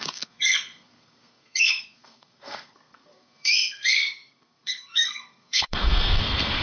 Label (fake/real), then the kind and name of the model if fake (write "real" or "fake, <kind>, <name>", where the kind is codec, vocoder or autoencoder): fake, codec, SNAC